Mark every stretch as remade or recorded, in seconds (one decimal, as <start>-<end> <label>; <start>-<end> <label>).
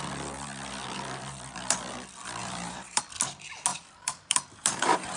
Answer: 0.0-2.4 recorded; 2.4-3.0 remade; 3.0-3.7 recorded; 3.7-5.2 remade